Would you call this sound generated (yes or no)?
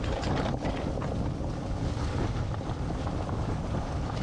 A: yes